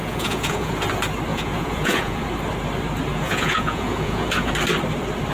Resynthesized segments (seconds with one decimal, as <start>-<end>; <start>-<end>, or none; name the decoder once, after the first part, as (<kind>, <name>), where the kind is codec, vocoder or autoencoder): 0.0-0.7 (vocoder, Vocos); 1.3-2.2; 3.1-4.5